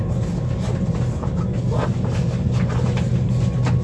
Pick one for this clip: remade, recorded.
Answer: recorded